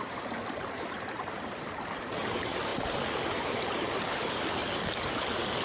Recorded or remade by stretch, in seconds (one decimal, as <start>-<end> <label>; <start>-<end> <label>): 0.0-5.6 remade